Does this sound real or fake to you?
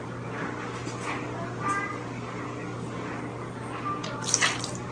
real